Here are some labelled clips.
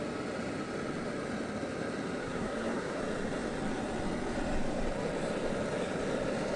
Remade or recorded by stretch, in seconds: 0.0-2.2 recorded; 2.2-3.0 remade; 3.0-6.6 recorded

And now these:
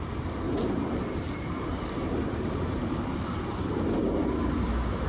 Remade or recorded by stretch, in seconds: 0.0-0.6 recorded; 0.6-3.7 remade; 3.7-5.1 recorded

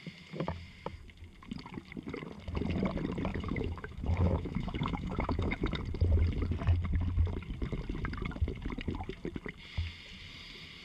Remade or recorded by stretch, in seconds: 0.0-3.3 recorded; 3.3-5.8 remade; 5.8-10.8 recorded

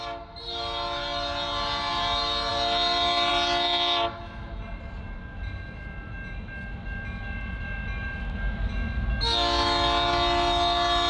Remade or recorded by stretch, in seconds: 0.0-11.1 recorded

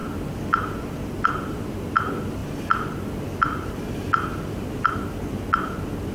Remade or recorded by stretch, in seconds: 0.0-6.1 recorded

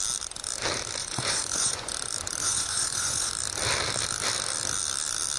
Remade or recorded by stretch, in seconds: 0.0-1.0 recorded; 1.0-1.9 remade; 1.9-2.4 recorded; 2.4-3.3 remade; 3.3-5.4 recorded

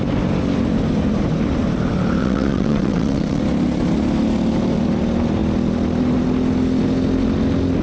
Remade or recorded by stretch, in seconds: 0.0-2.2 recorded; 2.2-3.4 remade; 3.4-7.8 recorded

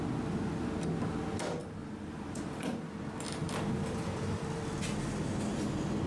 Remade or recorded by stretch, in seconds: 0.0-1.6 recorded; 1.6-3.0 remade; 3.0-3.4 recorded; 3.4-4.6 remade; 4.6-6.1 recorded